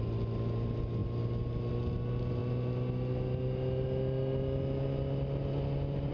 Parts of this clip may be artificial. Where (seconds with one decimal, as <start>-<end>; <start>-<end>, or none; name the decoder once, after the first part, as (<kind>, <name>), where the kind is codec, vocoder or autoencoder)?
none